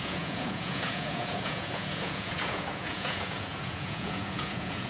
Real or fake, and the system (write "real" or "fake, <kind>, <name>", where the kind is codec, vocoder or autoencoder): fake, vocoder, Vocos